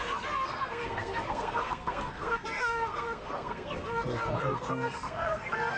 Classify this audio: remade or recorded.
remade